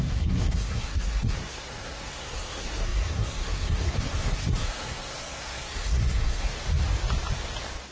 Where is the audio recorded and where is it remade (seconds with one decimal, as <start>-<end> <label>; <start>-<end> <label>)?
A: 0.0-6.5 remade; 6.5-7.9 recorded